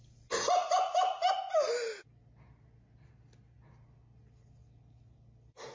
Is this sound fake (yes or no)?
no